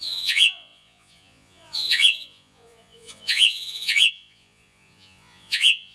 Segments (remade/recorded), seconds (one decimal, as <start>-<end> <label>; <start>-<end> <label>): 0.0-5.9 remade